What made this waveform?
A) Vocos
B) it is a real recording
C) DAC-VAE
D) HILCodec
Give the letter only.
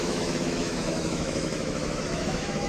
C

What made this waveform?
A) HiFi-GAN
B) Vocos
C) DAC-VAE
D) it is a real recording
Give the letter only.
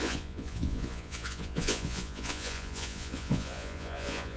B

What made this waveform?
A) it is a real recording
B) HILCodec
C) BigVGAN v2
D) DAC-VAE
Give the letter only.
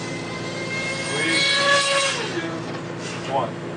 A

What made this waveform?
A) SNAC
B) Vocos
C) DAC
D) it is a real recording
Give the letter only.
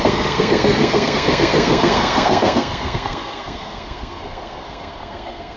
A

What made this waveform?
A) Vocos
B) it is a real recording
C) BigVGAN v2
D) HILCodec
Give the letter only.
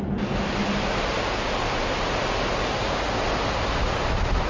B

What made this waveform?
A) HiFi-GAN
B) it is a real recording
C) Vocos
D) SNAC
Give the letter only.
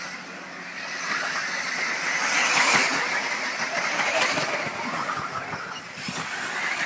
B